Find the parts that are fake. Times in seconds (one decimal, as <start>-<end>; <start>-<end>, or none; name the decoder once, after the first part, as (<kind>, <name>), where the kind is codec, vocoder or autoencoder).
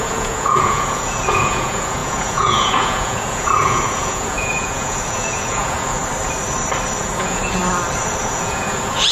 0.0-6.0 (vocoder, Vocos); 7.0-7.6; 8.2-9.1